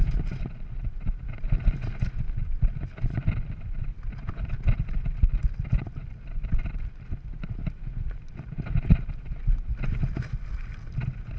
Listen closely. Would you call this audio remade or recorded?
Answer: recorded